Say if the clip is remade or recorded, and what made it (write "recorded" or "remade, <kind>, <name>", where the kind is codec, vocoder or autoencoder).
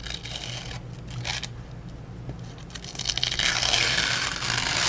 recorded